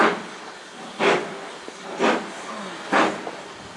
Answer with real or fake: real